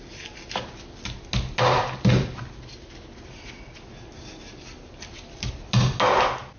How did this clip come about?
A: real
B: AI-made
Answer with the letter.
A